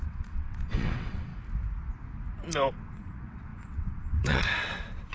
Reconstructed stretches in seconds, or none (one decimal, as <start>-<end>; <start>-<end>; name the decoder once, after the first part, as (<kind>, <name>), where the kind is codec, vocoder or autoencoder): 0.0-1.3 (vocoder, WaveNeXt); 2.7-5.1